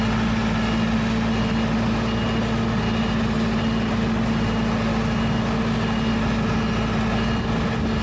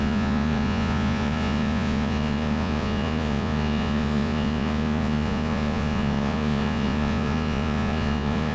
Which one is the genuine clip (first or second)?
first